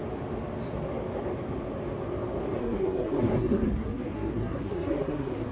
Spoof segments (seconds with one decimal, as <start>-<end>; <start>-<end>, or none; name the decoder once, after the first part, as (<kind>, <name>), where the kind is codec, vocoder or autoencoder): 2.6-5.5 (codec, SNAC)